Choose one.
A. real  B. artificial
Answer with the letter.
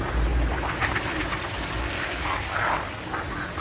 A